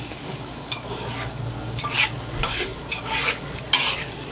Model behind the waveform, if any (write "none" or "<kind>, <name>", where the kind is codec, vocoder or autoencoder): codec, DAC